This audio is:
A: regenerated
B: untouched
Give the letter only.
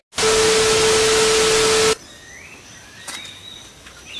B